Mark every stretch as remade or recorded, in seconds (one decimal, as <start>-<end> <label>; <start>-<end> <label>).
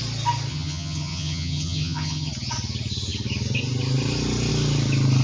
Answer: 0.0-0.5 recorded; 0.5-2.3 remade; 2.3-5.2 recorded